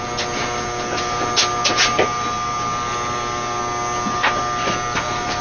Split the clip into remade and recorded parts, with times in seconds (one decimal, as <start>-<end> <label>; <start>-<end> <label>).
0.0-5.4 recorded